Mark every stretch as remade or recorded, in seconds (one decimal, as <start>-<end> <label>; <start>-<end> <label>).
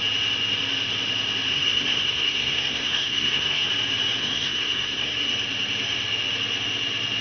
0.0-1.5 recorded; 1.5-3.7 remade; 3.7-4.2 recorded; 4.2-5.3 remade; 5.3-7.2 recorded